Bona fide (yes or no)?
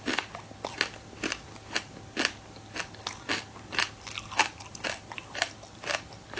yes